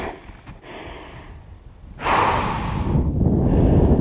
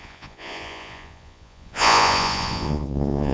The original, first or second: first